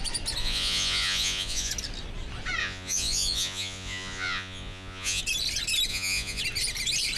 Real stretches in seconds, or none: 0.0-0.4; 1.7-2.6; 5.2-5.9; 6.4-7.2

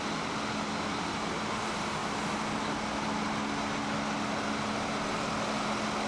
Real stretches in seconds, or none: 0.0-6.1

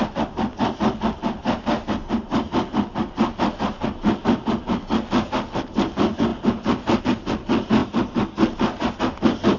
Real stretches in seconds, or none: 0.0-9.6

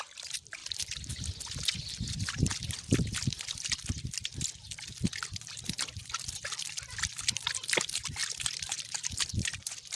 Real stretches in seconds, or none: 0.6-2.1; 2.5-6.0; 8.2-10.0

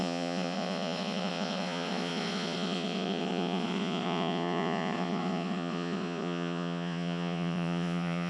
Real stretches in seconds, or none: none